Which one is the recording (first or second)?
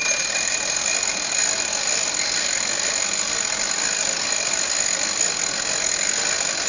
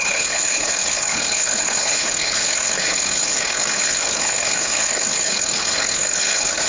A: first